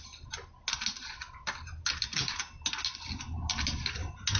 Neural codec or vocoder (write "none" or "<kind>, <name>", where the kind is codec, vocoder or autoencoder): none